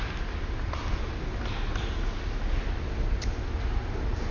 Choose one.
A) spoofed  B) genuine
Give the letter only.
B